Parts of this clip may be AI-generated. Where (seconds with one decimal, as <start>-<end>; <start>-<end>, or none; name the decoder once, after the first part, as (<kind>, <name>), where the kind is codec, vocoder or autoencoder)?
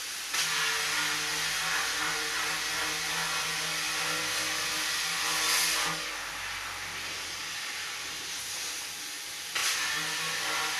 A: none